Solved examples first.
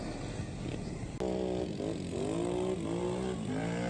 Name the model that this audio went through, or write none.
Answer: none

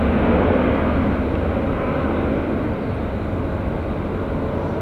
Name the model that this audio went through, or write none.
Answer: none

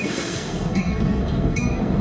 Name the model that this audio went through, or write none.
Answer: codec, SNAC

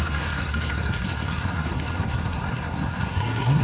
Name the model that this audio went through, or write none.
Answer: codec, SNAC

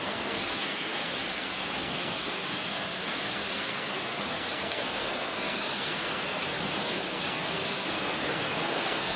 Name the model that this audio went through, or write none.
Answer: codec, SNAC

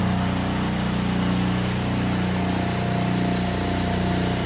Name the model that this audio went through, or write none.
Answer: none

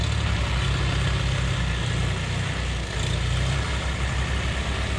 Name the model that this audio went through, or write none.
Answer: none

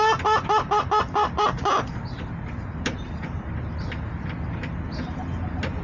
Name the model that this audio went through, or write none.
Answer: none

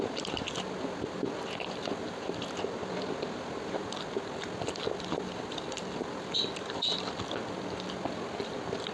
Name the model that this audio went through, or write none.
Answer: none